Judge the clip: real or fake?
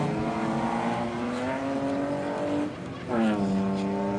real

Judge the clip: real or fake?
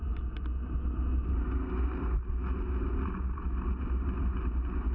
real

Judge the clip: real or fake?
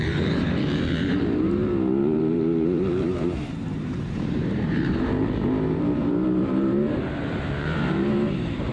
fake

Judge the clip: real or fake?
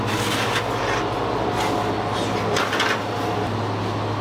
real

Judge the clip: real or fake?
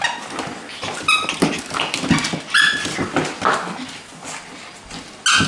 real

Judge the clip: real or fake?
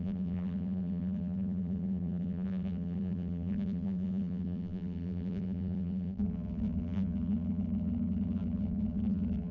fake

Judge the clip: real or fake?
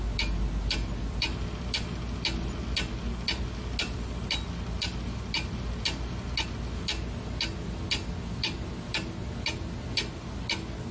real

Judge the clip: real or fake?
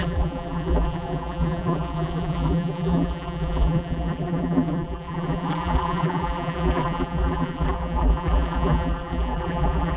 fake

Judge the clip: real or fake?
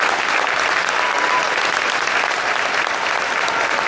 real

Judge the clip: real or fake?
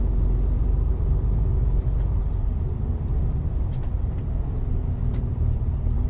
fake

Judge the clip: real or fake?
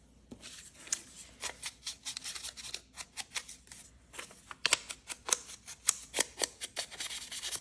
real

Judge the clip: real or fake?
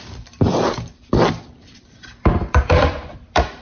fake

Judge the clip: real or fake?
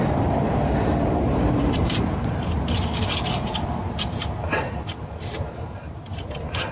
fake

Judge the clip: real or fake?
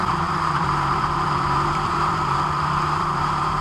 fake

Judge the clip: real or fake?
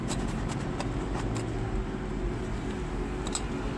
real